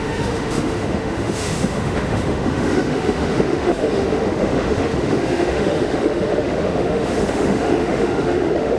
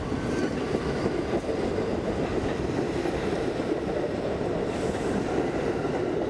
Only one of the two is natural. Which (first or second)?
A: second